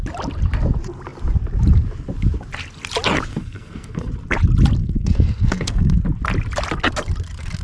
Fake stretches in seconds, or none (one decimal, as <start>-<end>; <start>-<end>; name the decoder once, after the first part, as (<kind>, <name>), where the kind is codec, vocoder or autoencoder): 3.3-4.1 (codec, SNAC); 4.8-6.0